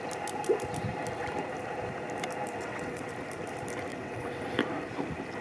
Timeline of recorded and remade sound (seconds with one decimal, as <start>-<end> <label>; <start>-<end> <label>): 0.0-2.6 recorded; 2.6-3.1 remade; 3.1-3.9 recorded; 3.9-4.4 remade; 4.4-5.4 recorded